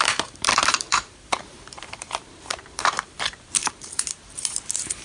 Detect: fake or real fake